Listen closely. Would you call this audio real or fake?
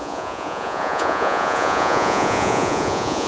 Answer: fake